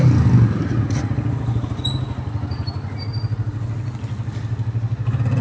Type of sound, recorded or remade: recorded